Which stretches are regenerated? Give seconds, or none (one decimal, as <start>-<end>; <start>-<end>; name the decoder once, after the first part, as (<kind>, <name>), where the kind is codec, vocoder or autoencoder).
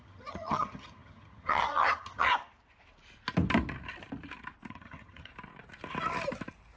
0.0-2.3 (vocoder, HiFi-GAN); 4.7-5.3